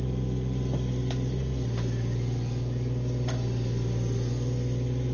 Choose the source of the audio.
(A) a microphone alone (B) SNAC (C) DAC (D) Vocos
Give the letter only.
A